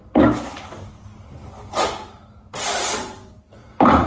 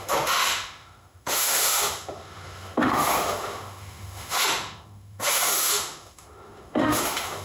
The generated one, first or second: second